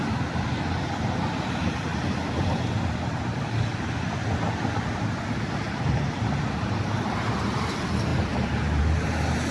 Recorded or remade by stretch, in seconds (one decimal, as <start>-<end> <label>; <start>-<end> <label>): 0.0-9.5 recorded